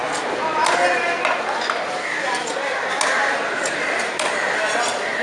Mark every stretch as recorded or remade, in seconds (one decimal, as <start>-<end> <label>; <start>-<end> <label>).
0.0-3.2 recorded; 3.2-4.5 remade; 4.5-5.2 recorded